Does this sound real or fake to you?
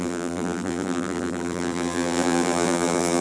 fake